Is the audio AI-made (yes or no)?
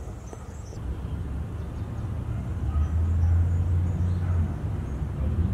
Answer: no